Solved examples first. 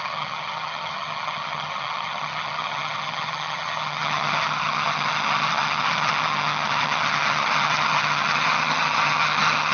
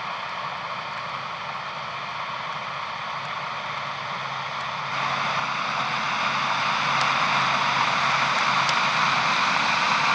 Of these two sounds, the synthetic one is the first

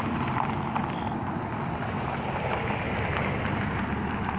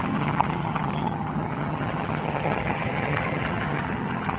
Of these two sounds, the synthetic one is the second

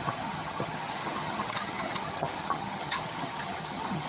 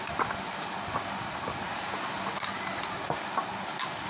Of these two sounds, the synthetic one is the first